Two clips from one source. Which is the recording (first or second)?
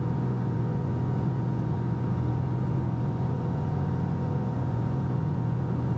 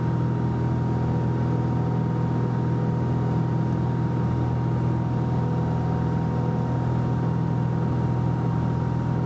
second